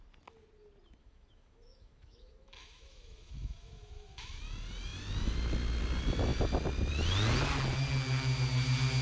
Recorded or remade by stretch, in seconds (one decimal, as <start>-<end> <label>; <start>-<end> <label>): 0.0-1.0 recorded; 1.0-4.4 remade; 4.4-9.0 recorded